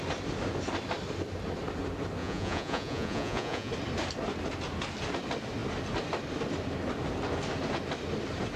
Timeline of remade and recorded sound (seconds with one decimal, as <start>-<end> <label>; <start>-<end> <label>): 0.0-2.2 recorded; 2.2-3.7 remade; 3.7-8.6 recorded